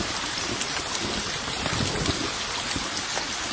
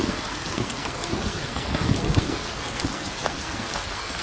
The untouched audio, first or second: first